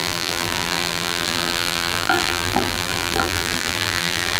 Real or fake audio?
fake